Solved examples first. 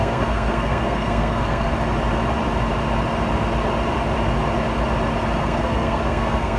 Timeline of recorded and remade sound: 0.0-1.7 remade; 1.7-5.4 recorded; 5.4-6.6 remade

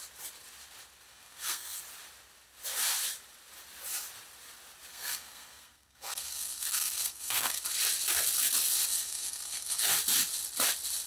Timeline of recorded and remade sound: 0.0-1.1 recorded; 1.1-1.8 remade; 1.8-4.9 recorded; 4.9-7.6 remade; 7.6-8.9 recorded; 8.9-9.9 remade; 9.9-11.1 recorded

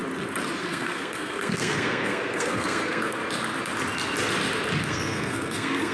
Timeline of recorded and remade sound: 0.0-0.6 recorded; 0.6-3.2 remade; 3.2-4.8 recorded; 4.8-5.9 remade

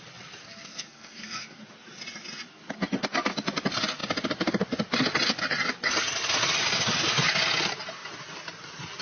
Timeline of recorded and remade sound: 0.0-0.4 recorded; 0.4-1.6 remade; 1.6-9.0 recorded

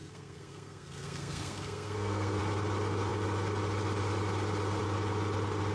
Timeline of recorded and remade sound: 0.0-2.4 remade; 2.4-5.7 recorded